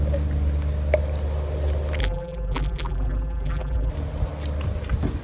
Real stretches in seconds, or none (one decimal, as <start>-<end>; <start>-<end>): 0.0-2.0; 3.9-5.2